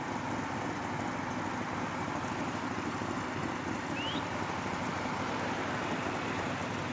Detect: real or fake real